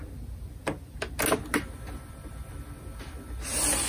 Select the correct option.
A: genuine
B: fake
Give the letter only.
A